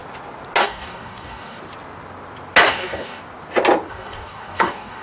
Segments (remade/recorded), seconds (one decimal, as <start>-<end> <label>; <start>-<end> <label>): 0.0-0.6 recorded; 0.6-1.6 remade; 1.6-2.7 recorded; 2.7-3.2 remade; 3.2-3.9 recorded; 3.9-5.0 remade

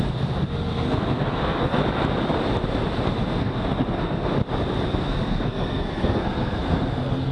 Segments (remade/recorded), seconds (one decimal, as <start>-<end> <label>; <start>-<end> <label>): 0.0-1.8 remade; 1.8-3.4 recorded; 3.4-4.4 remade; 4.4-5.0 recorded; 5.0-7.3 remade